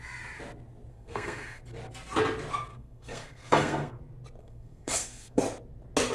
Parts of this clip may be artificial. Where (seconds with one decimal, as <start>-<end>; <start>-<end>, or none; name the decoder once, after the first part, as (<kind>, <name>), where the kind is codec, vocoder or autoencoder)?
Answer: 0.9-1.6 (codec, SNAC); 2.7-4.0; 4.4-5.4